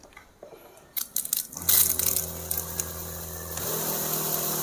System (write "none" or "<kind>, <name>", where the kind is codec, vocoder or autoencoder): none